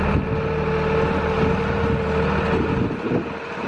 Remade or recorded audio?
recorded